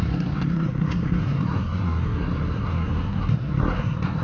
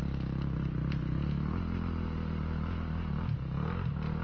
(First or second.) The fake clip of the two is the first